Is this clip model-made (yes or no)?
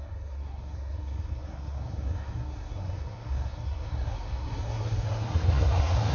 yes